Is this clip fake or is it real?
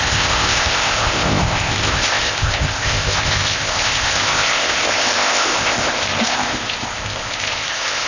fake